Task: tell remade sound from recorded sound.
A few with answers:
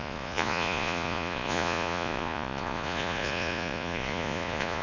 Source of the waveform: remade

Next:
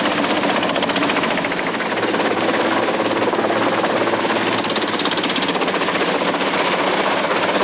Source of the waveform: recorded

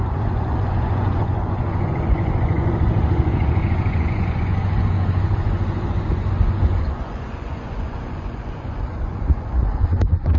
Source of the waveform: remade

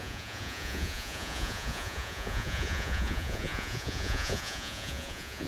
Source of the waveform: remade